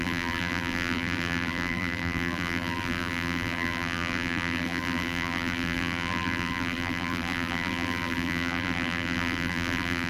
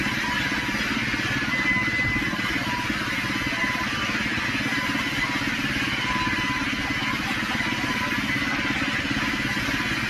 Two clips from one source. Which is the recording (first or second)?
second